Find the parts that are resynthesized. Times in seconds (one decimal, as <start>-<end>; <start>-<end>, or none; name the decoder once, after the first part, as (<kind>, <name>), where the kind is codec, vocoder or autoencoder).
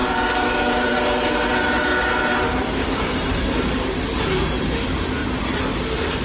0.0-2.3 (vocoder, BigVGAN v2); 5.2-5.7